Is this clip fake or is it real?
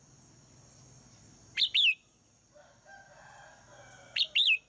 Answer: real